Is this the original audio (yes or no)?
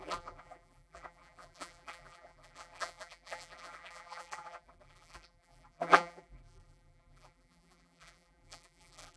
no